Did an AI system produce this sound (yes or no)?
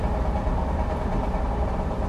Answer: no